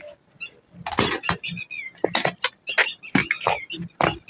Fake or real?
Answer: real